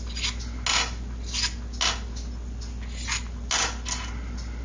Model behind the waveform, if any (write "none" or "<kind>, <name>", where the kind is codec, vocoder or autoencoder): none